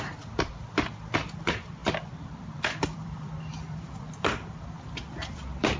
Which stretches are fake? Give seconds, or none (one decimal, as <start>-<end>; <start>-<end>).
0.0-5.8